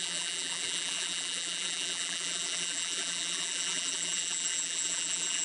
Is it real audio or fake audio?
fake